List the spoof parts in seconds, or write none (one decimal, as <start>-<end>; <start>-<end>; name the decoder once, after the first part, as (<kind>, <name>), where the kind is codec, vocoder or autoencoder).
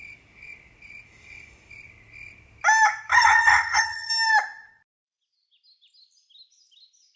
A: 3.1-4.1 (vocoder, HiFi-GAN)